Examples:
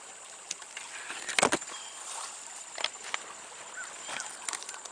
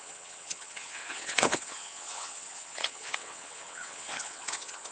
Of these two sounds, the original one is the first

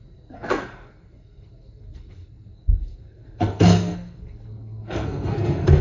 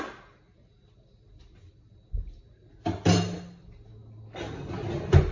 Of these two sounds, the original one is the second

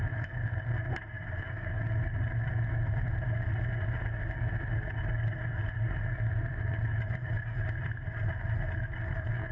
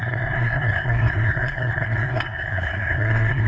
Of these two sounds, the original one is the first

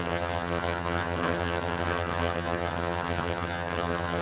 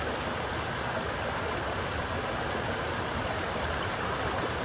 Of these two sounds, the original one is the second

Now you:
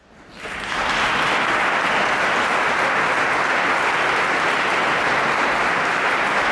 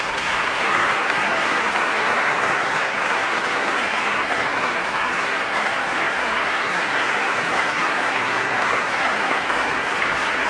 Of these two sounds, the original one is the first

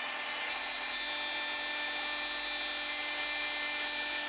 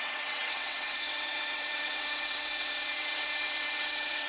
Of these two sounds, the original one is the first